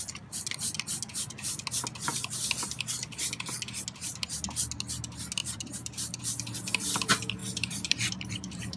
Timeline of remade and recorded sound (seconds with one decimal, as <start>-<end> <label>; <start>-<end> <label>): 0.0-5.4 recorded; 5.4-6.2 remade; 6.2-7.4 recorded; 7.4-8.8 remade

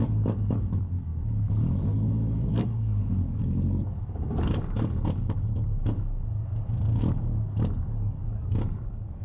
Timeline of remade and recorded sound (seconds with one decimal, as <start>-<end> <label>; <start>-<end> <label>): 0.0-9.2 remade

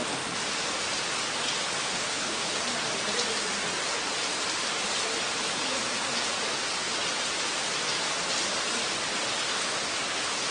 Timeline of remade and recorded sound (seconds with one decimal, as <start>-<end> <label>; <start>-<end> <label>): 0.0-1.8 recorded; 1.8-2.6 remade; 2.6-10.5 recorded

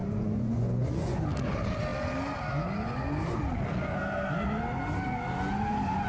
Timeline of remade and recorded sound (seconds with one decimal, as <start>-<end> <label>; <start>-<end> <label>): 0.0-1.2 remade; 1.2-6.1 recorded

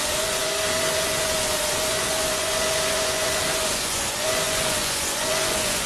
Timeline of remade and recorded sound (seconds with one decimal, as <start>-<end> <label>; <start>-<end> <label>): 0.0-5.9 remade

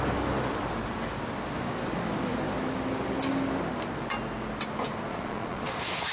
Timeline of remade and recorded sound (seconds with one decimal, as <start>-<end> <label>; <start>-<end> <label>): 0.0-5.1 recorded; 5.1-6.1 remade

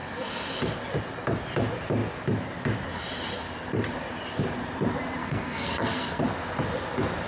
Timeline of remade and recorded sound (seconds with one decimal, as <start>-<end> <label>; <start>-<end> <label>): 0.0-5.2 recorded; 5.2-6.2 remade; 6.2-7.3 recorded